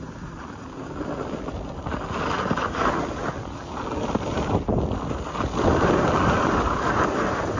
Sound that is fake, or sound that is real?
real